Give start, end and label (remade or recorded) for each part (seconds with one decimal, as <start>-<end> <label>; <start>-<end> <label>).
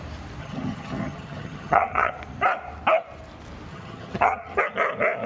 0.0-0.4 recorded; 0.4-2.1 remade; 2.1-3.7 recorded; 3.7-4.6 remade; 4.6-5.3 recorded